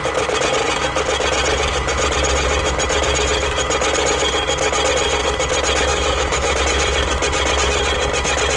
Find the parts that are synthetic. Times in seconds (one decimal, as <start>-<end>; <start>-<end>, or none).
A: 5.9-6.6